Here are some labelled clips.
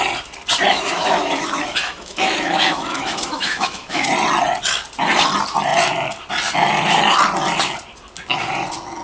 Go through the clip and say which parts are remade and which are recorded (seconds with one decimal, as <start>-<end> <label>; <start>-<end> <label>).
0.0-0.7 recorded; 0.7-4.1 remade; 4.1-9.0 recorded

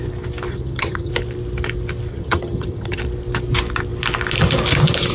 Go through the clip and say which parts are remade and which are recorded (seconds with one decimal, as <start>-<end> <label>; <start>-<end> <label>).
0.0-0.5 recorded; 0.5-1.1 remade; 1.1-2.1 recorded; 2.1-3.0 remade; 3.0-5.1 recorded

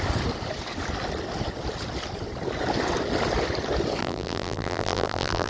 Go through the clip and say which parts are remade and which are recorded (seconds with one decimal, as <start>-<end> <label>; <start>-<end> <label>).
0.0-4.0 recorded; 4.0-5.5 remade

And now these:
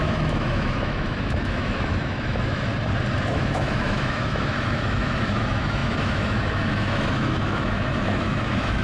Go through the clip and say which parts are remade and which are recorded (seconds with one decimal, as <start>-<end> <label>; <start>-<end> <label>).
0.0-2.7 remade; 2.7-3.3 recorded; 3.3-8.8 remade

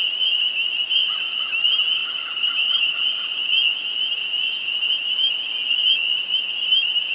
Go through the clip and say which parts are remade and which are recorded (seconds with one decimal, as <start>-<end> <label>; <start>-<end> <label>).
0.0-2.0 recorded; 2.0-3.4 remade; 3.4-4.5 recorded; 4.5-5.5 remade; 5.5-6.1 recorded; 6.1-7.1 remade

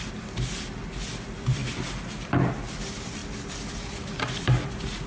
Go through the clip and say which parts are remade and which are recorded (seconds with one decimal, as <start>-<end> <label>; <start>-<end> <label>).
0.0-5.1 remade

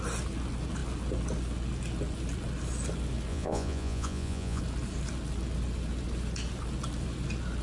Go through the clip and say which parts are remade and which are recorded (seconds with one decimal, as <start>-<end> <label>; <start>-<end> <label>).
0.0-3.3 recorded; 3.3-4.6 remade; 4.6-7.6 recorded

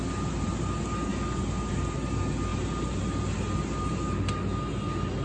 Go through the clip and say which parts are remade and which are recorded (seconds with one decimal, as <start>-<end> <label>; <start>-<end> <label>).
0.0-5.2 recorded